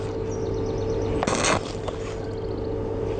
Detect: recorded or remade recorded